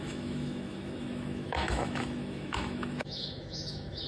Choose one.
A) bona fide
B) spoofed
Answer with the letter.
B